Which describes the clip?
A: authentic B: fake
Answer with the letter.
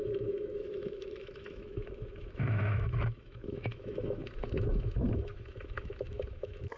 B